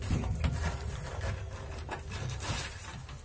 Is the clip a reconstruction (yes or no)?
no